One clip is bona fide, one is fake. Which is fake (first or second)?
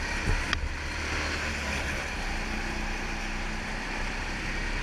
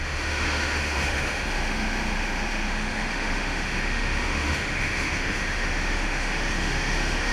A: second